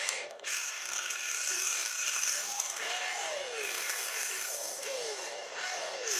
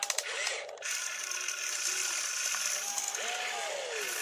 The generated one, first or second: first